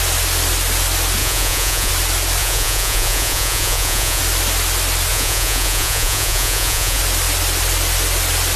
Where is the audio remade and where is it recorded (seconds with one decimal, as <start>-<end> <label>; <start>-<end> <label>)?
0.0-1.2 recorded; 1.2-1.9 remade; 1.9-2.4 recorded; 2.4-4.2 remade; 4.2-5.1 recorded; 5.1-7.0 remade; 7.0-8.6 recorded